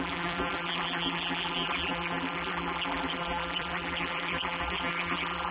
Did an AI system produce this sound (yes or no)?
yes